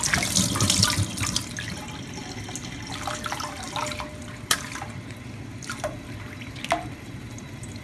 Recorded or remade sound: recorded